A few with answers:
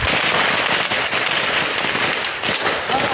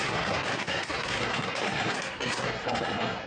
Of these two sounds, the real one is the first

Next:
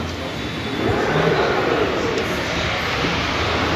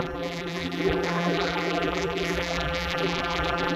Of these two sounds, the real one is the first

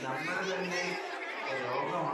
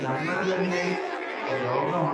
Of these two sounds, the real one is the first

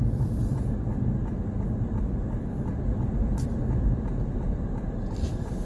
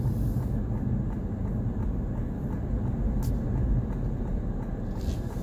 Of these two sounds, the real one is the second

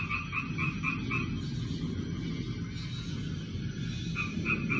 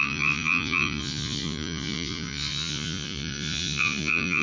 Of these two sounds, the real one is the first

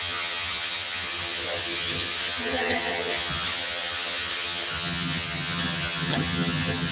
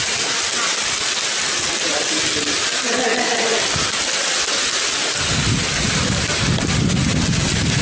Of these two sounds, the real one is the second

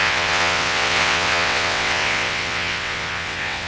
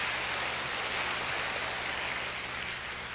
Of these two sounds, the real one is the second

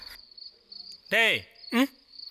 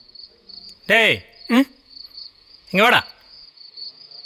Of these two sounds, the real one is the first